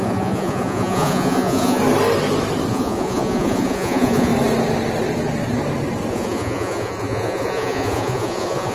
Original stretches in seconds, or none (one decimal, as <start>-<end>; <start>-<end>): 1.8-2.7; 4.3-6.1